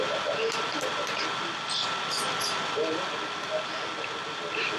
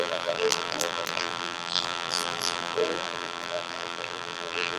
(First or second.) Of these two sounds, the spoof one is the second